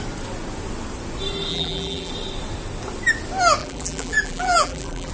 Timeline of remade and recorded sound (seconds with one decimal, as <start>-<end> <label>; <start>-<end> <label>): 0.0-1.5 recorded; 1.5-2.1 remade; 2.1-3.6 recorded; 3.6-5.1 remade